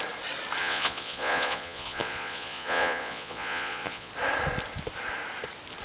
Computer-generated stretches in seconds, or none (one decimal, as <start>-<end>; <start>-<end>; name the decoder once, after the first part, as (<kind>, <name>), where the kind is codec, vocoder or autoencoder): 0.6-4.1 (vocoder, Vocos)